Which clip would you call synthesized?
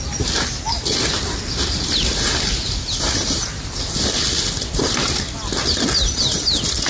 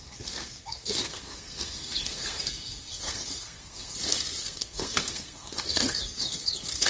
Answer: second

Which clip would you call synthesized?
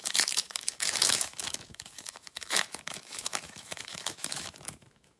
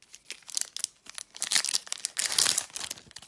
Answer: first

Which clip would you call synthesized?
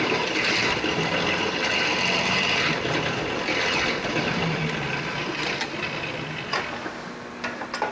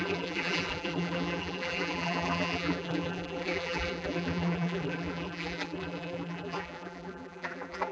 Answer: second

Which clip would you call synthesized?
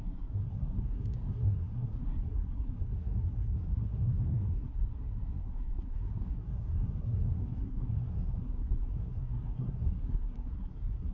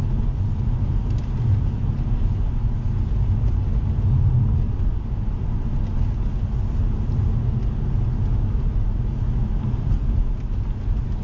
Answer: first